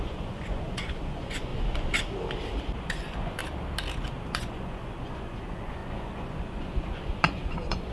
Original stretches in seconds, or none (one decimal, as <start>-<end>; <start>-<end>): 1.5-2.8; 3.4-4.3